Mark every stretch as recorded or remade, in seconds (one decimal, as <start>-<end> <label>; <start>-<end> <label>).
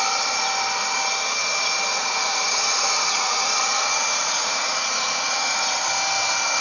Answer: 0.0-1.9 recorded; 1.9-5.9 remade; 5.9-6.6 recorded